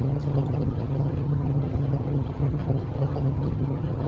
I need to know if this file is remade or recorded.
remade